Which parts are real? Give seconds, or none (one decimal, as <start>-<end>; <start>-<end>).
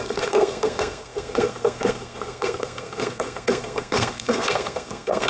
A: none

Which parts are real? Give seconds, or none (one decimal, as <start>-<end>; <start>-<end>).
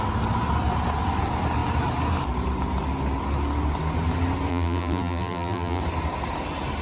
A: 0.0-4.5; 5.8-6.8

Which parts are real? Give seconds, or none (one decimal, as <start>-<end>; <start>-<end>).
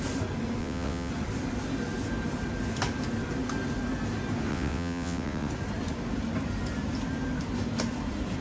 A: 0.0-0.6; 1.1-4.5; 5.5-8.4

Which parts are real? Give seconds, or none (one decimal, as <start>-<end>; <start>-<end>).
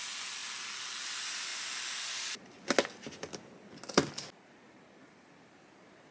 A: 0.0-6.1